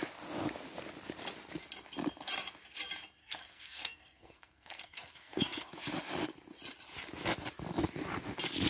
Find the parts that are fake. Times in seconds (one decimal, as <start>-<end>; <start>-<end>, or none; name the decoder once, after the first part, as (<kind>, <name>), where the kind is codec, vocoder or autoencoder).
3.2-5.7 (codec, SNAC)

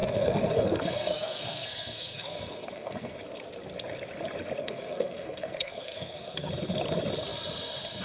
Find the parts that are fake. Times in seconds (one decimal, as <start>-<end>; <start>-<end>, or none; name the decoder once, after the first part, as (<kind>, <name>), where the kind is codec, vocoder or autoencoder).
0.0-3.2 (codec, SNAC); 4.6-6.5

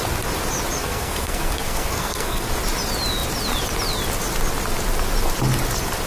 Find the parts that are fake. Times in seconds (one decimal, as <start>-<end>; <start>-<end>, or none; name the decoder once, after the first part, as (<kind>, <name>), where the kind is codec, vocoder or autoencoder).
0.8-2.5 (codec, SNAC)